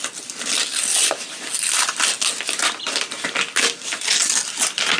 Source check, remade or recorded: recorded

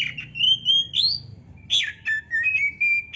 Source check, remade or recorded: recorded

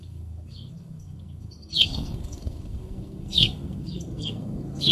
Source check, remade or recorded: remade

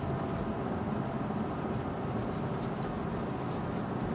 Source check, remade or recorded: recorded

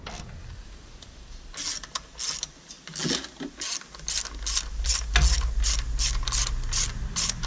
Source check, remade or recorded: recorded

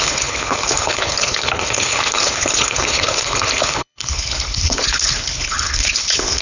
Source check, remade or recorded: remade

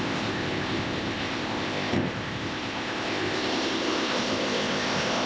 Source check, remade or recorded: remade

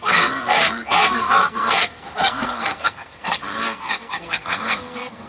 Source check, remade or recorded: remade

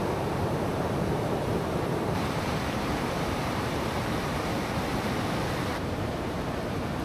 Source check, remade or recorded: remade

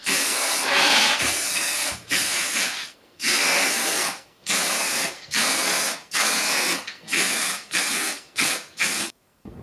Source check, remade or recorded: remade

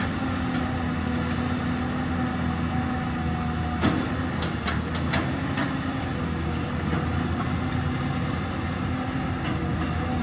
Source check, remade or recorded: recorded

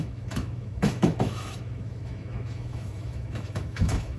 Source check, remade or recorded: remade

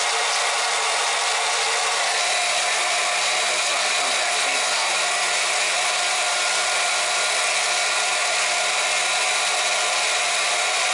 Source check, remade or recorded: recorded